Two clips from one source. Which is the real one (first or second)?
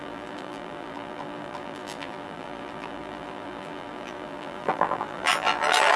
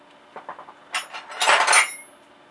second